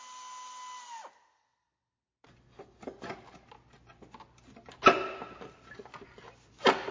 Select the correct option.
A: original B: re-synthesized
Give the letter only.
A